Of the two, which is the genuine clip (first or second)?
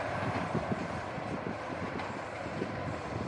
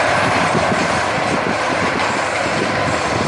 second